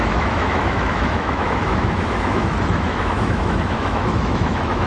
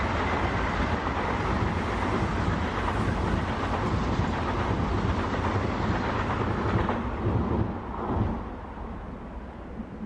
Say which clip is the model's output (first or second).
first